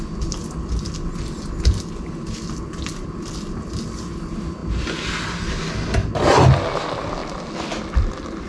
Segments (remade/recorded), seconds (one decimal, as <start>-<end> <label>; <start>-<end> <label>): 0.0-8.5 recorded